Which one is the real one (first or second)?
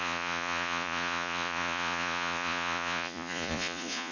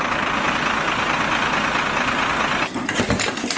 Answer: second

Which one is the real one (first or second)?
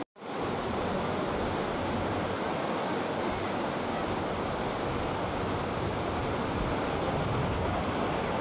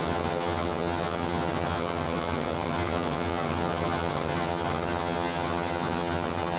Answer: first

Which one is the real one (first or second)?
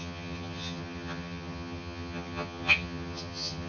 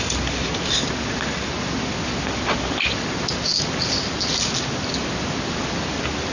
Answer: second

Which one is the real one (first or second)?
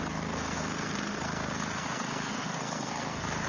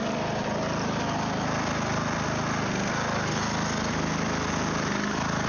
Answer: second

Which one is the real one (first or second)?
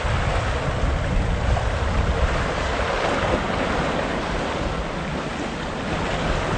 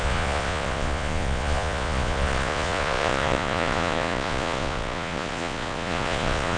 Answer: first